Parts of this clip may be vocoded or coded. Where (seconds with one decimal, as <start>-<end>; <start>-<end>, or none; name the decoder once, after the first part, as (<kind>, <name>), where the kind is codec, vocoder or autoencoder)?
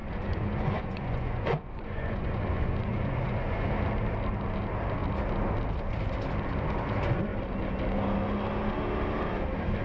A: 0.0-3.7 (vocoder, Vocos)